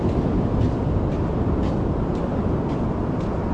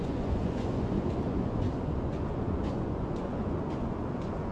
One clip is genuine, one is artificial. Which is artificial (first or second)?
second